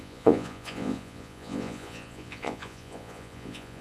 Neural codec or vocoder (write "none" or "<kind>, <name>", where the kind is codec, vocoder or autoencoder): vocoder, Vocos